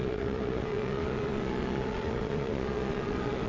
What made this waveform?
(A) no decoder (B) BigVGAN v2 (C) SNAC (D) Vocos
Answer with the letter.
D